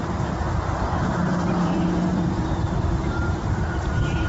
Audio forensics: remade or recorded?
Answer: remade